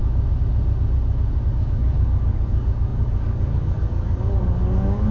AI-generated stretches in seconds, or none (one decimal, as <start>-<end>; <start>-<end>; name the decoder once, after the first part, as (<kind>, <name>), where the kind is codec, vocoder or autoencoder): 1.5-5.1 (codec, DAC)